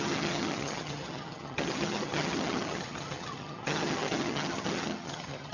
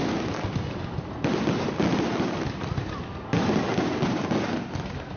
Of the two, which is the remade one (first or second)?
first